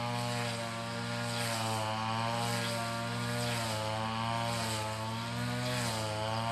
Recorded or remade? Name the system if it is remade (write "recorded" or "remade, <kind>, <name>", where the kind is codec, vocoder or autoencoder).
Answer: recorded